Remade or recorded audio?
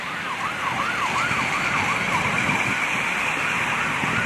remade